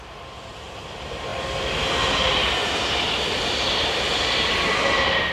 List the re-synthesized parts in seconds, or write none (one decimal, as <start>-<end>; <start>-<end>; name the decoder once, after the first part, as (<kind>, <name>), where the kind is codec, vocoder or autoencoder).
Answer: 2.6-4.0 (vocoder, BigVGAN v2)